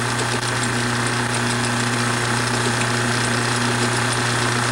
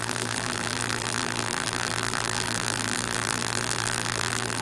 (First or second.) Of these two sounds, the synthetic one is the second